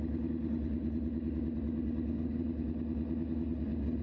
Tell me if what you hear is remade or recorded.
recorded